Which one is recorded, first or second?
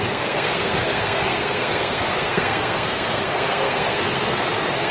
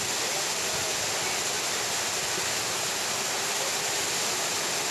second